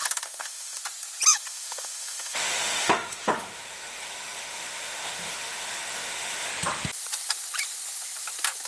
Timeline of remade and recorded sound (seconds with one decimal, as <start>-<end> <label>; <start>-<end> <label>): 0.0-0.8 remade; 0.8-1.3 recorded; 1.3-6.5 remade; 6.5-8.7 recorded